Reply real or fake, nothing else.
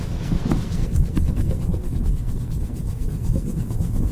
fake